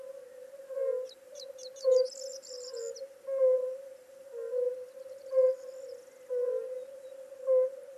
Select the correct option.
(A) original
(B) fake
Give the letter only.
A